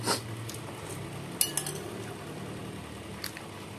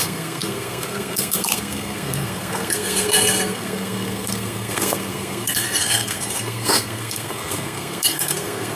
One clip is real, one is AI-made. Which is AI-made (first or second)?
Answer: second